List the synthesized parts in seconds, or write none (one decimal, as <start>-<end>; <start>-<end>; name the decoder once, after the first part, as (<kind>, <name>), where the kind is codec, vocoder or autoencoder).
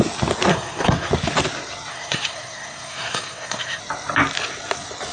0.5-1.1 (codec, SNAC); 1.9-3.8